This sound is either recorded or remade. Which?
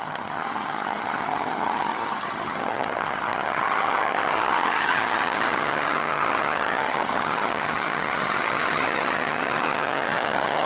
remade